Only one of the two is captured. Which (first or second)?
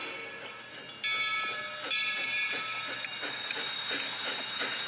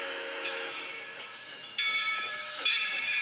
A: first